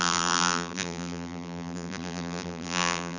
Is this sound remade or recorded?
remade